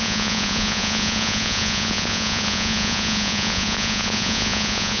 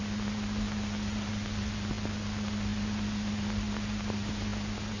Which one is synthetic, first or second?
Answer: first